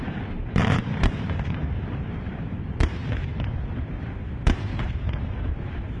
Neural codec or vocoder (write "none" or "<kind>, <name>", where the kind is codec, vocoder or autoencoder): vocoder, BigVGAN v2